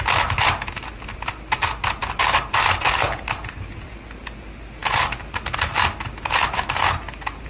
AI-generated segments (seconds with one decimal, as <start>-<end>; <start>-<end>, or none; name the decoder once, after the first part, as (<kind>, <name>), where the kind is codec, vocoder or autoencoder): 2.0-3.9 (vocoder, BigVGAN v2); 4.8-6.8